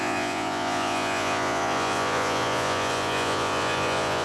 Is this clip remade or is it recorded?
remade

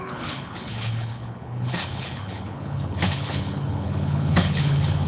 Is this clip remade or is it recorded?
remade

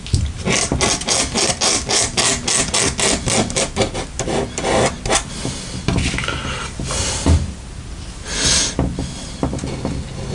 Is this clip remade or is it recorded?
recorded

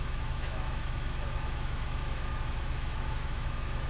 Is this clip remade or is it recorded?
remade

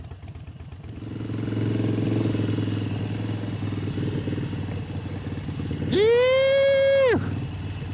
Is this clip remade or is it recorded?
recorded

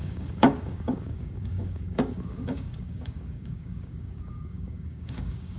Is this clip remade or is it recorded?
remade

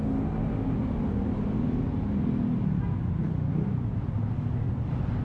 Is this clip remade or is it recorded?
recorded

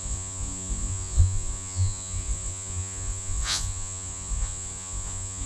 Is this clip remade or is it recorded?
remade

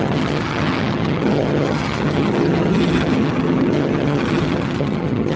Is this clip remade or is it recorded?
remade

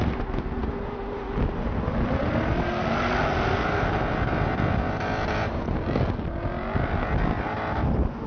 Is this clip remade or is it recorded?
recorded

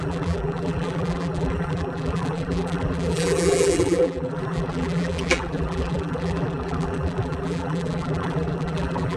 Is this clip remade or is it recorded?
remade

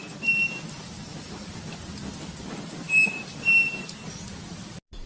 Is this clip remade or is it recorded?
recorded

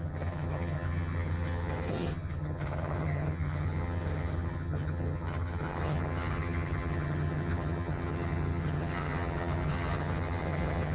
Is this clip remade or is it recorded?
remade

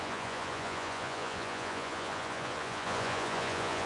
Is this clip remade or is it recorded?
remade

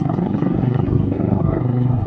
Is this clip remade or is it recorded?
remade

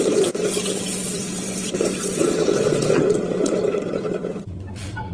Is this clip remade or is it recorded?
remade